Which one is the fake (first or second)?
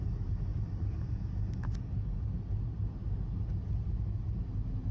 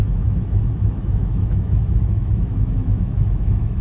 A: second